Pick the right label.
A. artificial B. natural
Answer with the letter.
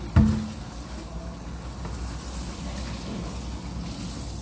B